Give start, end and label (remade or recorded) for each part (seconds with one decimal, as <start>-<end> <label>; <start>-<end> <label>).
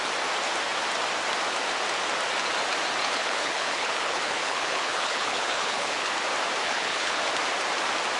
0.0-3.0 recorded; 3.0-6.1 remade; 6.1-6.6 recorded; 6.6-7.2 remade; 7.2-8.2 recorded